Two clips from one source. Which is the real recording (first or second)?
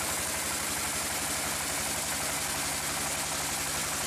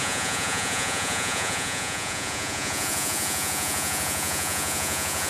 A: first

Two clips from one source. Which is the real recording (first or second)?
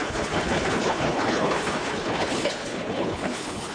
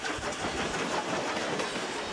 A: second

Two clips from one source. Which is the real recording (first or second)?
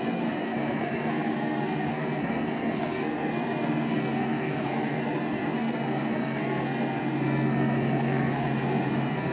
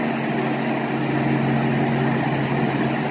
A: second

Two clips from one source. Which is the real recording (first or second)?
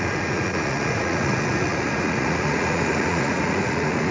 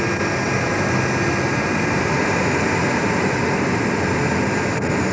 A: second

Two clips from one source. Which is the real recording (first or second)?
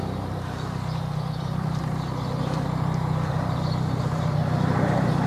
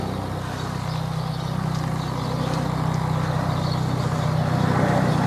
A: second